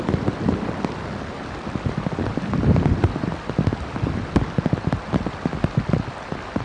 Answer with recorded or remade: recorded